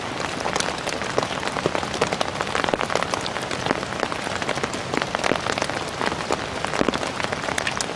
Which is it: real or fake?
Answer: real